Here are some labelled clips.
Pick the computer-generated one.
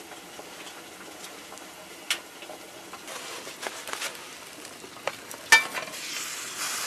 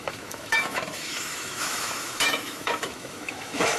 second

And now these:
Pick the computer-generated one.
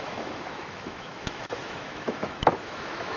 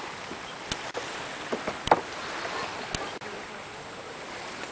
first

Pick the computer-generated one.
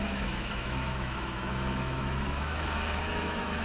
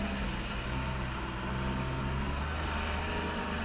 first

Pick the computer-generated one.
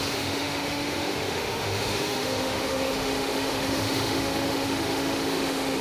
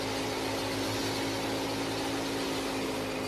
first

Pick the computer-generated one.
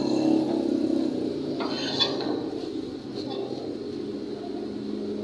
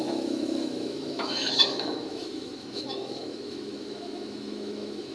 second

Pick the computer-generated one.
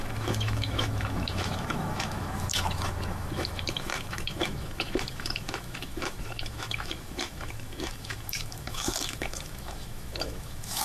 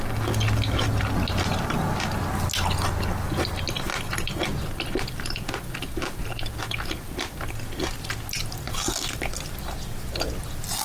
first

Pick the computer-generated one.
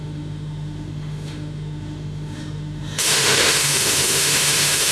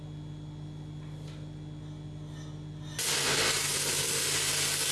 first